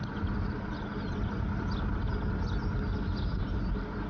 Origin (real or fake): real